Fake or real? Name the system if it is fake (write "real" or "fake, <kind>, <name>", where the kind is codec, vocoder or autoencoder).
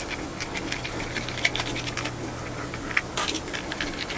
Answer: real